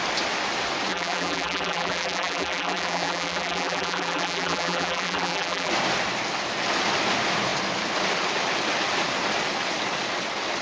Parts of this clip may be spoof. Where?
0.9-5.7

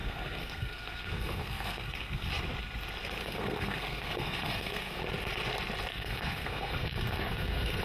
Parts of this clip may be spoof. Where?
0.0-2.3; 3.2-5.0; 5.9-7.8

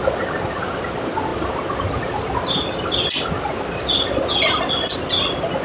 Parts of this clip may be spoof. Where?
none

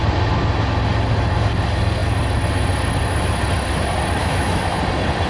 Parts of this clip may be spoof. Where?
4.2-4.8

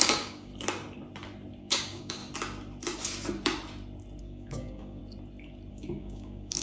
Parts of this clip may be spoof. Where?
0.0-0.5; 1.6-2.2; 4.2-5.0; 5.7-6.6

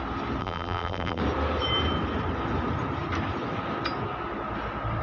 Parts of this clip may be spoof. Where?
0.4-1.2